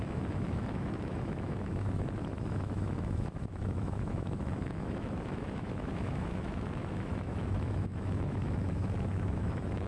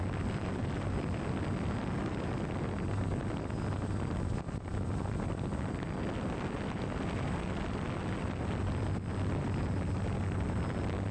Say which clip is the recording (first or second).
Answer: second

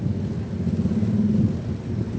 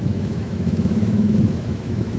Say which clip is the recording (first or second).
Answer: first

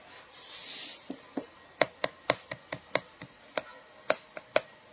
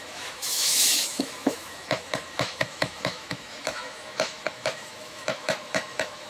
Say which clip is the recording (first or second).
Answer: first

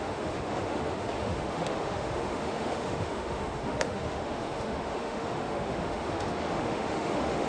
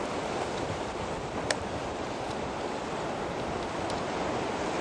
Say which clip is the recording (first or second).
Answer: second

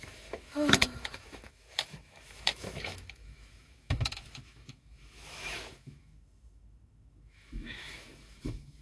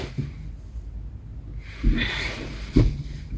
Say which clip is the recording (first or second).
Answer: second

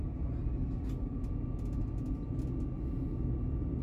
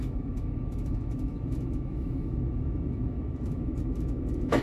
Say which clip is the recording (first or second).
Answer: first